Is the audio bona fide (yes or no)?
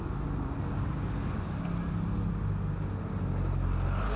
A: yes